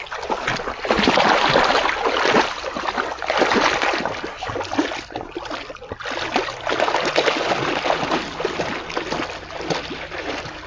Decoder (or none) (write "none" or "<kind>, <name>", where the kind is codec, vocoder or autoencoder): none